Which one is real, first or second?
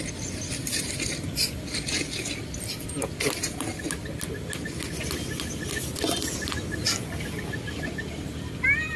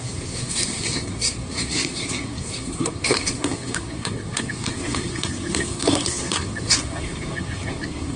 first